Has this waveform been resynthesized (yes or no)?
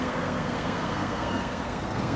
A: yes